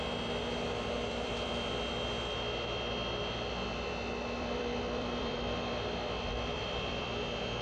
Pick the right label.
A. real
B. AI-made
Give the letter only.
B